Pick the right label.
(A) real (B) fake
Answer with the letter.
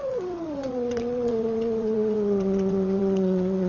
B